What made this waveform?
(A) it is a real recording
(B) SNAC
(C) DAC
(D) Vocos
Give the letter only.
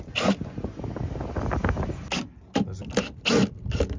A